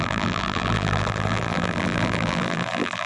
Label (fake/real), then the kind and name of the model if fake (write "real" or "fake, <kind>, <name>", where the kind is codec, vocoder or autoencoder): fake, vocoder, BigVGAN v2